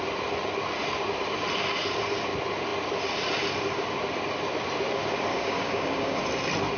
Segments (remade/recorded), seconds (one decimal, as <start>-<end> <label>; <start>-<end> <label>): 0.0-5.3 recorded; 5.3-6.2 remade; 6.2-6.8 recorded